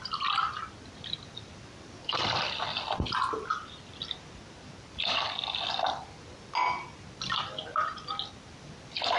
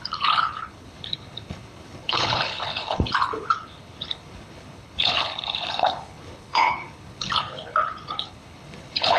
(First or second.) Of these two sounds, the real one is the first